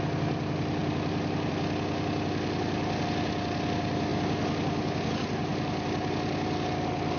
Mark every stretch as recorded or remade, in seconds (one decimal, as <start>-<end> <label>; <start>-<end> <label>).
0.0-7.2 recorded